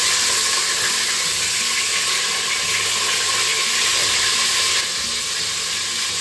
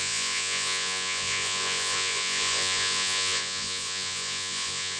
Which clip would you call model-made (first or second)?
second